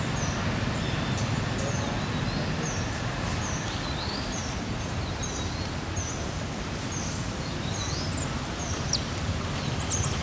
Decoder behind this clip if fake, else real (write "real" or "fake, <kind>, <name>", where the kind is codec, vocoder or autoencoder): real